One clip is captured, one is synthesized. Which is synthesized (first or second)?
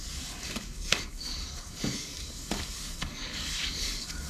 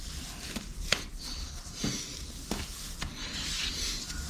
first